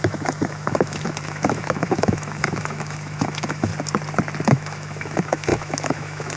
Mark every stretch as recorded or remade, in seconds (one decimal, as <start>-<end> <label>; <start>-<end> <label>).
0.0-3.7 remade; 3.7-4.5 recorded; 4.5-6.4 remade